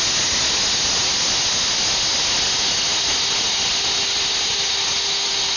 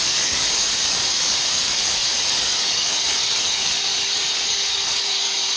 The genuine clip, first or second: first